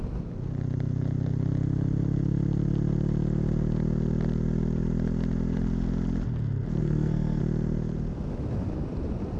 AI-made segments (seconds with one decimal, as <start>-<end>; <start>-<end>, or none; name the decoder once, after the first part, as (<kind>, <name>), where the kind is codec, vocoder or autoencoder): 6.8-7.4 (codec, SNAC)